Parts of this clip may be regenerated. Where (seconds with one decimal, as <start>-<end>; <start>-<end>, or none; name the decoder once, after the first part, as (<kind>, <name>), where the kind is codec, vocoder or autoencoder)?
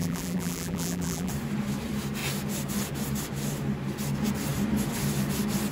0.0-1.3 (vocoder, BigVGAN v2)